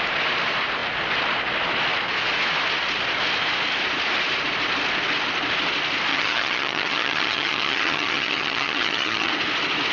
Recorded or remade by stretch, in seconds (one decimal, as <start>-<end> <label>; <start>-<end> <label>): 0.0-6.1 recorded; 6.1-9.3 remade; 9.3-9.9 recorded